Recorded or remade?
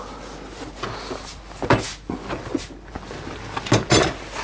recorded